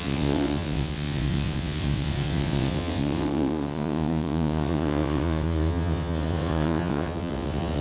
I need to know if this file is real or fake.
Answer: fake